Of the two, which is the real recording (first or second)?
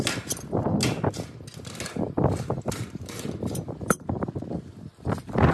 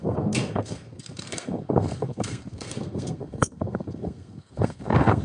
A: first